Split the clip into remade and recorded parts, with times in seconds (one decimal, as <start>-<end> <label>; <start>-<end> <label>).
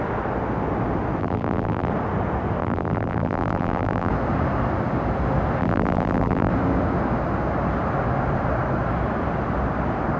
0.0-1.2 recorded; 1.2-1.9 remade; 1.9-2.6 recorded; 2.6-4.1 remade; 4.1-5.6 recorded; 5.6-6.5 remade; 6.5-10.2 recorded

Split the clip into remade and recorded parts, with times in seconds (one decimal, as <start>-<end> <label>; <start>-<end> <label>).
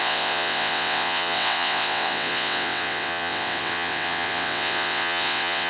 0.0-5.7 remade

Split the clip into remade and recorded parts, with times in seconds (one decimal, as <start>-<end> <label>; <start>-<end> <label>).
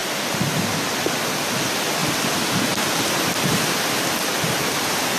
0.0-5.2 recorded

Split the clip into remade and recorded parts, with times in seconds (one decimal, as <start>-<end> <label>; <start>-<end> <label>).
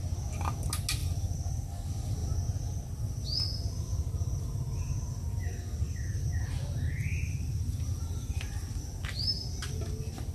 0.0-1.0 recorded; 1.0-1.6 remade; 1.6-7.0 recorded; 7.0-8.4 remade; 8.4-10.3 recorded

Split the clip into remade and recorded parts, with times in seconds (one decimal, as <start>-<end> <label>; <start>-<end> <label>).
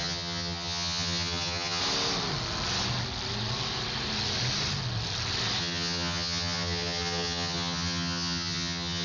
0.0-1.8 remade; 1.8-5.6 recorded; 5.6-9.0 remade